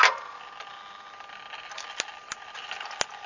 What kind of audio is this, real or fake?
real